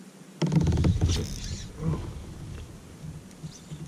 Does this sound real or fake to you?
real